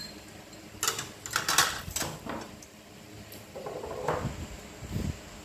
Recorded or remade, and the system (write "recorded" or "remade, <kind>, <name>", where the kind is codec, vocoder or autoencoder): recorded